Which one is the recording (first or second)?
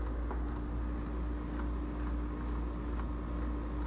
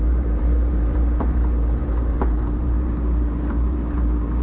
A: first